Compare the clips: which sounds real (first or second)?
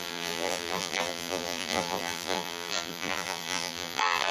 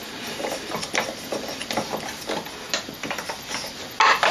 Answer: second